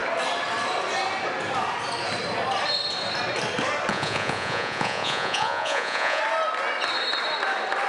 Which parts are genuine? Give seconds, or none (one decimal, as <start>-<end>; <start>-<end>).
0.0-3.9; 6.2-7.9